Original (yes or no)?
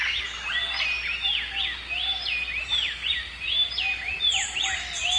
yes